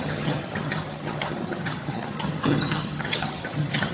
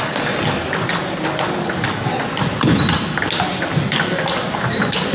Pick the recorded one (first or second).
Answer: second